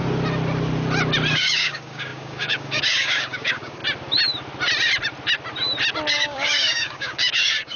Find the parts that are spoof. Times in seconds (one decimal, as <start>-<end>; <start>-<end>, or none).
1.3-3.8; 6.1-7.8